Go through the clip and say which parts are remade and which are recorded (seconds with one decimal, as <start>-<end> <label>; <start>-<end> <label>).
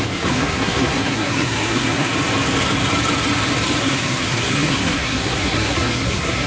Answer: 0.0-2.1 remade; 2.1-3.8 recorded; 3.8-6.5 remade